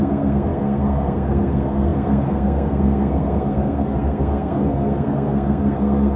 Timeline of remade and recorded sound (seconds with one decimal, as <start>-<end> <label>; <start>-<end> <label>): 0.0-6.2 remade

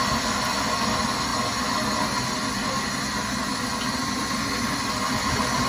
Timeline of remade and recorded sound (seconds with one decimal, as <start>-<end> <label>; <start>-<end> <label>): 0.0-5.7 recorded

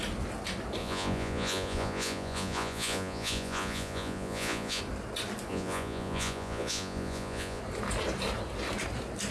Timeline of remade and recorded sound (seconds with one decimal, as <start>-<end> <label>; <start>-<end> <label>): 0.0-0.8 recorded; 0.8-4.8 remade; 4.8-5.5 recorded; 5.5-7.6 remade; 7.6-9.3 recorded